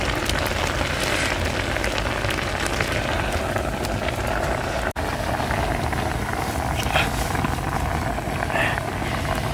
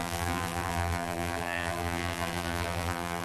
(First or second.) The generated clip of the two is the second